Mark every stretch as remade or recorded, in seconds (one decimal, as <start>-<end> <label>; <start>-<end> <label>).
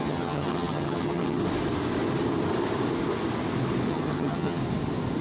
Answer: 0.0-1.4 remade; 1.4-3.9 recorded; 3.9-4.6 remade; 4.6-5.2 recorded